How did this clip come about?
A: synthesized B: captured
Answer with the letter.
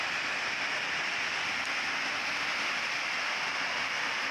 B